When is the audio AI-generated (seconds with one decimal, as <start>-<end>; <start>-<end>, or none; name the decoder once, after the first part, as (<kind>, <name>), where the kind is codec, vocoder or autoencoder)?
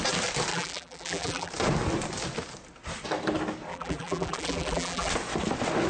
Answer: 0.5-1.5 (vocoder, BigVGAN v2); 3.7-5.1